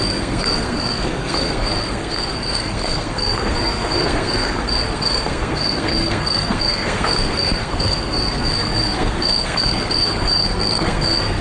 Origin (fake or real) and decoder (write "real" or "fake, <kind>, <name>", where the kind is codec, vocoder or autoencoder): fake, codec, SNAC